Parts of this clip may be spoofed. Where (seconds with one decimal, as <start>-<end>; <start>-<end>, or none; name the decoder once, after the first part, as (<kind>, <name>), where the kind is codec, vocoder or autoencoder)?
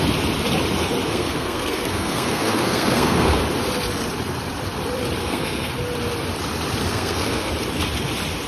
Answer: 1.0-3.4 (codec, SNAC); 5.2-5.7; 6.8-7.5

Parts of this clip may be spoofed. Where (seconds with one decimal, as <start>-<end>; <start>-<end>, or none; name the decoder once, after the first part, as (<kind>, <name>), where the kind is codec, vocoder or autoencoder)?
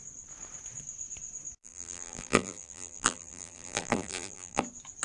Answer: 1.6-4.6 (vocoder, BigVGAN v2)